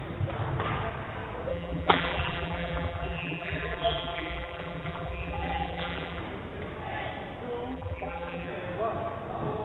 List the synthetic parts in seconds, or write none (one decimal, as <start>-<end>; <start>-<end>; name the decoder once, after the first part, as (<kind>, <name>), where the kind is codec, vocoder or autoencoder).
1.5-6.2 (vocoder, BigVGAN v2); 7.7-8.5